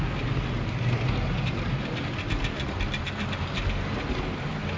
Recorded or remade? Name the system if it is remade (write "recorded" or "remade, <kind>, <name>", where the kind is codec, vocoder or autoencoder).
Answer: recorded